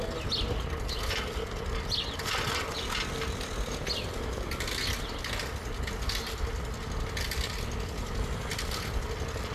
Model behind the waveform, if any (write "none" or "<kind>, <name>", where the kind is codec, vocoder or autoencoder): none